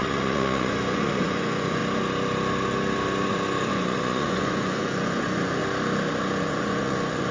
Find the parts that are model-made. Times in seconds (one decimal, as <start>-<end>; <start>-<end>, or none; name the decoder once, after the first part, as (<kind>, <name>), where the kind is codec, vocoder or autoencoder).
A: 0.0-1.8 (vocoder, Vocos); 3.7-5.6; 6.5-7.3